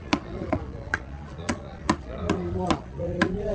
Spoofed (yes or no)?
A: yes